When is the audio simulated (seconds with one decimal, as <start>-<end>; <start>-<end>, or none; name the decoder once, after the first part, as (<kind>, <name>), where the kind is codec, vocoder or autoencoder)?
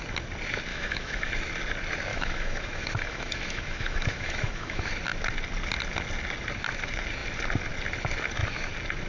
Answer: 0.7-1.3 (autoencoder, DAC-VAE); 2.1-4.9